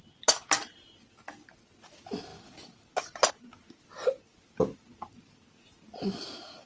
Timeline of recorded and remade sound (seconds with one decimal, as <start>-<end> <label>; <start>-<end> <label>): 0.0-6.7 recorded